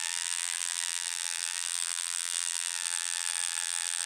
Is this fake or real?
fake